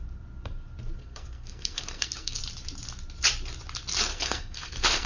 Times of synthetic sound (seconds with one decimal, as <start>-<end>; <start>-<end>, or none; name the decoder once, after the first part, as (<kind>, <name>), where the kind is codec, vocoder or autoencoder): 1.0-2.4 (codec, SNAC); 4.1-5.1